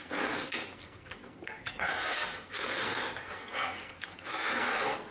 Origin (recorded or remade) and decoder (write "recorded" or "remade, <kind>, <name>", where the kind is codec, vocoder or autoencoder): remade, codec, SNAC